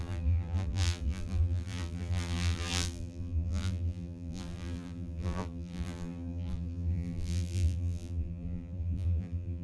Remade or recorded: remade